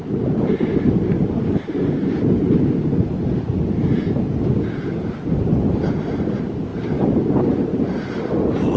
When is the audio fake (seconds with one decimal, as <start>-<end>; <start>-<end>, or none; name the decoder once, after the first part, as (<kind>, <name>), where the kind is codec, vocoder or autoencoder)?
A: 0.0-3.5 (vocoder, BigVGAN v2); 6.1-6.7